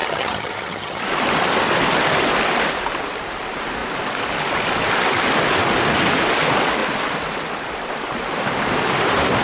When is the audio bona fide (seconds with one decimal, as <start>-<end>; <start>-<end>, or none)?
1.0-9.4